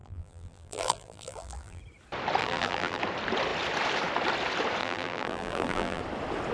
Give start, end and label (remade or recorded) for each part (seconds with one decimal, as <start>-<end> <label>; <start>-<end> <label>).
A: 0.0-1.8 remade; 1.8-2.4 recorded; 2.4-3.0 remade; 3.0-4.8 recorded; 4.8-6.0 remade; 6.0-6.5 recorded